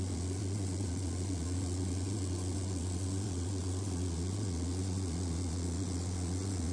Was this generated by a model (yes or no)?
yes